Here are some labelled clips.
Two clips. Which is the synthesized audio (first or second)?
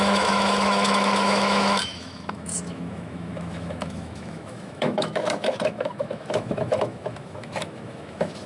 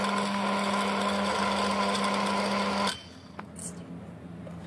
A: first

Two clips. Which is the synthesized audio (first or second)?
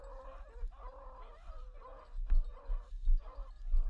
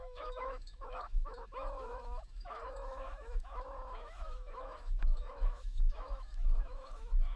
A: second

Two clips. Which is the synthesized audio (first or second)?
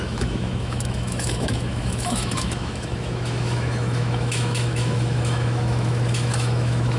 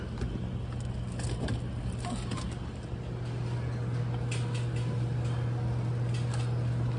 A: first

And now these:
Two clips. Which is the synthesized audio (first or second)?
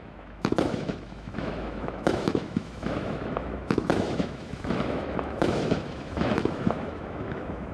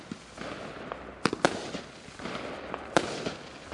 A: first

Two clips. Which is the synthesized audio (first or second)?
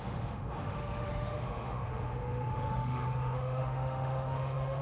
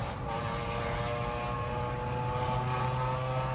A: first